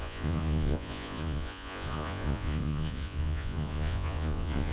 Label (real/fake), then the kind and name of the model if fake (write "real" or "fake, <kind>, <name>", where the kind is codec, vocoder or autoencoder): fake, vocoder, Vocos